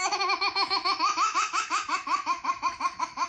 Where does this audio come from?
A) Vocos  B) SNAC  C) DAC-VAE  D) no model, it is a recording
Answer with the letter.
C